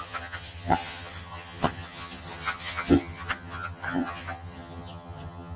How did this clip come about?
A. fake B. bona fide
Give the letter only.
A